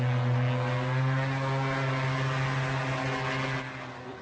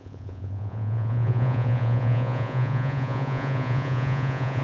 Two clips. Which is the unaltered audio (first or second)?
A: first